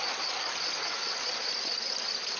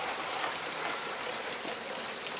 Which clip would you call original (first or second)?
first